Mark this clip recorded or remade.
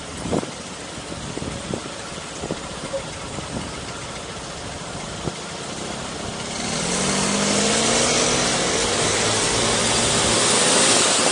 recorded